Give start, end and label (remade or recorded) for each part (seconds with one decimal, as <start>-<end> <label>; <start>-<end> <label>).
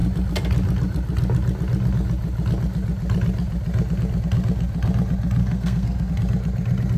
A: 0.0-5.4 recorded; 5.4-6.1 remade; 6.1-7.0 recorded